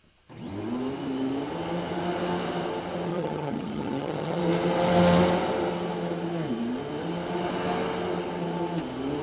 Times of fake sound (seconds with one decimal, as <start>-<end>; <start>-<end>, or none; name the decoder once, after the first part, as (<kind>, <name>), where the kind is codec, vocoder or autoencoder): 3.1-4.4 (vocoder, HiFi-GAN)